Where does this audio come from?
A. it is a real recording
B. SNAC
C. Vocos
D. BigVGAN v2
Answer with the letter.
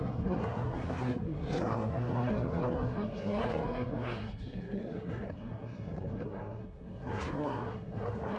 B